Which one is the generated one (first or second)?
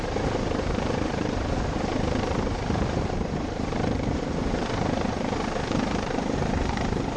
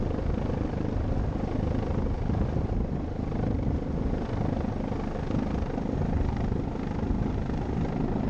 first